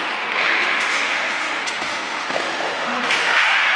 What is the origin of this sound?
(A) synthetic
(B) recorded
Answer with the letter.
A